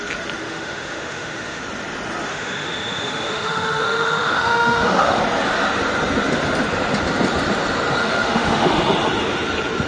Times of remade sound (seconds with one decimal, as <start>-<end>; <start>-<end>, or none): 0.4-1.6; 2.3-5.2; 8.0-8.8